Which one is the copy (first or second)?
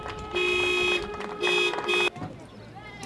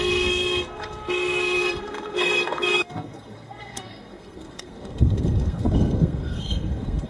second